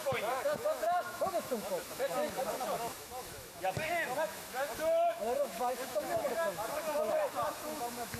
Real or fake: fake